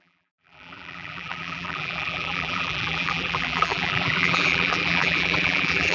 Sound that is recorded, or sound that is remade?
remade